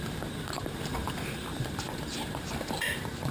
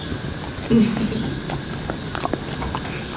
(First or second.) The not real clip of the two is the first